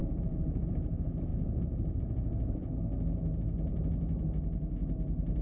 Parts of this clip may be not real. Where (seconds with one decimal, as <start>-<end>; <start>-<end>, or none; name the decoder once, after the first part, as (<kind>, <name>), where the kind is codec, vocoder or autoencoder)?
0.0-0.7 (vocoder, Vocos); 1.3-2.7